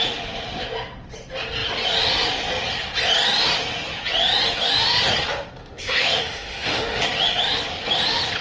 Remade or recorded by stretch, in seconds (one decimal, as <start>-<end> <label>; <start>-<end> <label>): 0.0-5.6 recorded; 5.6-7.0 remade; 7.0-8.4 recorded